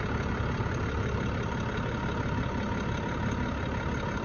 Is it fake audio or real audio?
real